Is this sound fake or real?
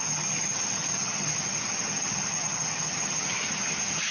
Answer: fake